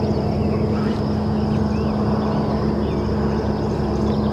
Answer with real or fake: real